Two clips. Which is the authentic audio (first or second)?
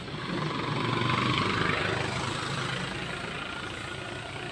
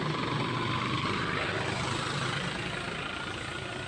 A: first